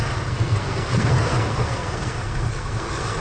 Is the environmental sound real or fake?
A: fake